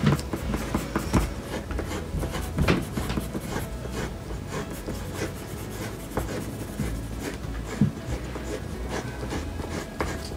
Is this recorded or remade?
recorded